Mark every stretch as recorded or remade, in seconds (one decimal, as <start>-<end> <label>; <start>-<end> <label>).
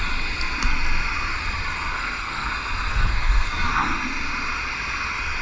0.0-1.9 recorded; 1.9-2.5 remade; 2.5-2.9 recorded; 2.9-3.7 remade; 3.7-5.4 recorded